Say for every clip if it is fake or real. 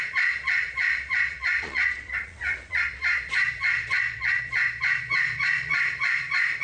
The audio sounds fake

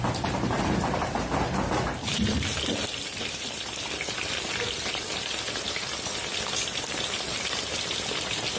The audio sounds real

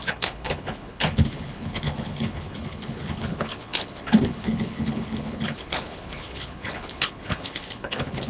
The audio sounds fake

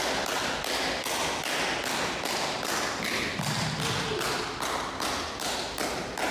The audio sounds real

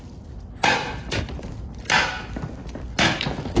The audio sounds real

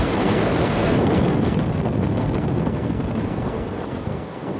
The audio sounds fake